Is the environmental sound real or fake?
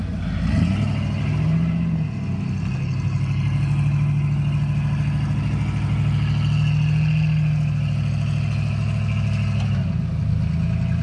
real